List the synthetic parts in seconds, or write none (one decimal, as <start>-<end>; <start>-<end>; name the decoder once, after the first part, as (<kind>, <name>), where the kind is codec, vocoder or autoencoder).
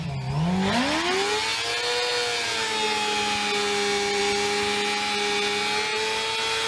none